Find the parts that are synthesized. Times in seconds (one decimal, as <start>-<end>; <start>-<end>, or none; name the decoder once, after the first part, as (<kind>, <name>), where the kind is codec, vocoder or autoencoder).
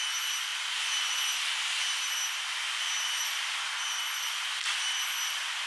none